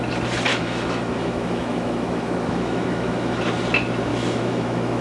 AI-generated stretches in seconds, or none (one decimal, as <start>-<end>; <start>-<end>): 0.5-3.4; 4.1-5.0